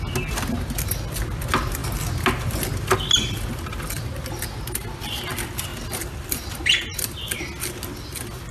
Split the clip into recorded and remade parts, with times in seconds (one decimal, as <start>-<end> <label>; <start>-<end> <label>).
0.0-5.7 recorded; 5.7-7.4 remade; 7.4-8.5 recorded